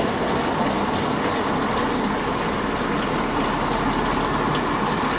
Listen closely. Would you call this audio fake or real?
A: real